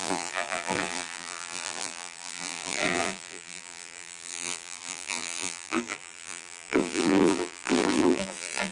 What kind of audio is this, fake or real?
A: fake